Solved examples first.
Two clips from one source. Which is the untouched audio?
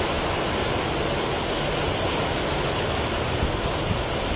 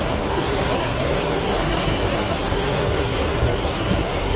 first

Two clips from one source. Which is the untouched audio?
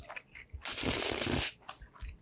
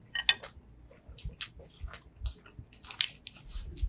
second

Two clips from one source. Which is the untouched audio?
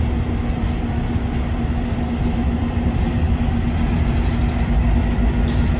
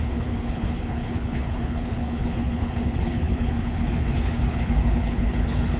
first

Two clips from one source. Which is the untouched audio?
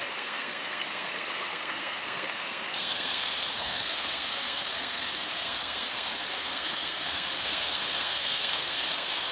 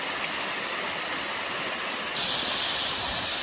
second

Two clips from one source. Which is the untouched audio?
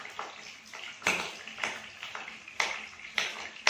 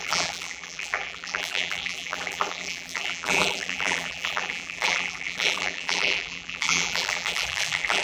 first